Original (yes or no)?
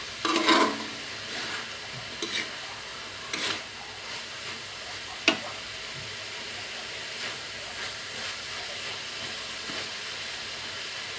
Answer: yes